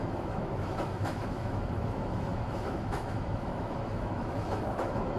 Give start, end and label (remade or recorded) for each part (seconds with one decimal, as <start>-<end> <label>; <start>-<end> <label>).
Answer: 0.0-5.2 remade